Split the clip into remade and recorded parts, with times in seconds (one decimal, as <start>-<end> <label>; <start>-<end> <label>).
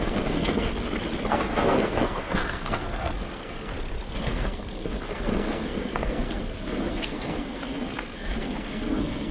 0.0-0.7 remade; 0.7-1.3 recorded; 1.3-3.7 remade; 3.7-4.2 recorded; 4.2-9.3 remade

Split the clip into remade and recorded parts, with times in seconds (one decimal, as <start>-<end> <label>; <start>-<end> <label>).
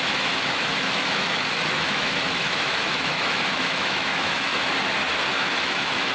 0.0-4.5 remade; 4.5-5.3 recorded; 5.3-6.1 remade